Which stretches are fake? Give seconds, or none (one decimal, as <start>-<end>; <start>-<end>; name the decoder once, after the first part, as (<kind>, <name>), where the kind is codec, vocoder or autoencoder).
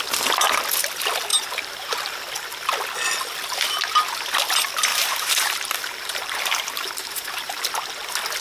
1.3-2.2 (vocoder, BigVGAN v2); 4.9-7.6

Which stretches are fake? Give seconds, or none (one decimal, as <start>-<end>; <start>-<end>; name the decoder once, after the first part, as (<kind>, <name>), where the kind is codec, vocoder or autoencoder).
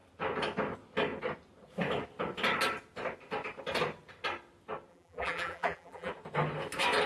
4.9-6.1 (vocoder, BigVGAN v2)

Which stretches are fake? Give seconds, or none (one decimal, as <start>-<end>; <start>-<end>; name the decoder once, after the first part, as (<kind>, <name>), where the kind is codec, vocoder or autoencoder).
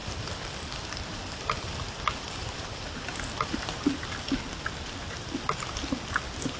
0.0-3.7 (vocoder, BigVGAN v2)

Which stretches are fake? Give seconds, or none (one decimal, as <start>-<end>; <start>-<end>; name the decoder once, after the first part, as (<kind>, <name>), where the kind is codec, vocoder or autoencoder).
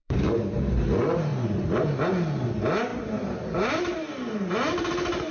0.0-0.6 (vocoder, BigVGAN v2); 2.9-5.3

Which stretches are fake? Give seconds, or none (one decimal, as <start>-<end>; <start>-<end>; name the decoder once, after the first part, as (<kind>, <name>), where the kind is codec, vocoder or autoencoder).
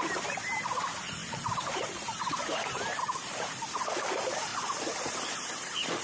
1.2-3.0 (vocoder, BigVGAN v2)